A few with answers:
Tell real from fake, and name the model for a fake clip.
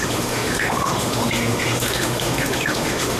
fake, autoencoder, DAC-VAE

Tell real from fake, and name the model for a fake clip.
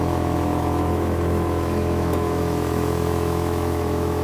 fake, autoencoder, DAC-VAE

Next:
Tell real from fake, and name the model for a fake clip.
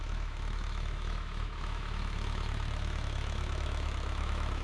fake, autoencoder, DAC-VAE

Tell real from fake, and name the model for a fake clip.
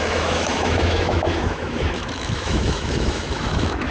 fake, autoencoder, DAC-VAE